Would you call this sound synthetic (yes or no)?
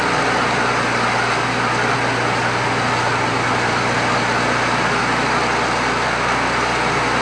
no